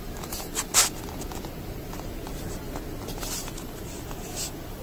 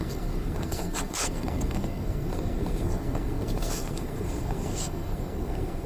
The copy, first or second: second